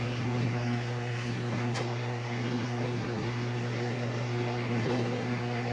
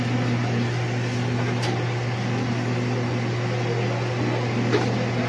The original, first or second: second